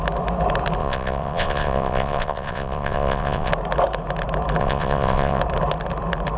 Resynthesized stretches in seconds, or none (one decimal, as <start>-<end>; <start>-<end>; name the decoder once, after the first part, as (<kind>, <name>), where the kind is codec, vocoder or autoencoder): 0.8-3.5 (vocoder, WaveNeXt); 4.6-5.4